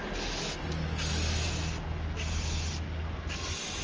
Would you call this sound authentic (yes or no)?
yes